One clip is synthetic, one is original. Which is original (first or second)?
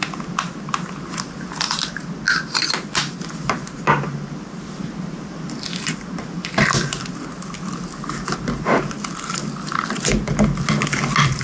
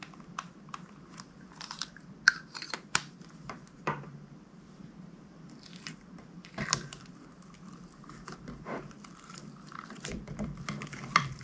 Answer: first